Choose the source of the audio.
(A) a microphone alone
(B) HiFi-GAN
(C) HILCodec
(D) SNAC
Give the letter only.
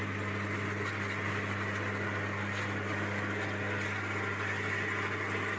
A